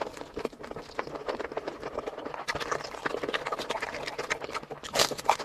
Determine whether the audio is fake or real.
real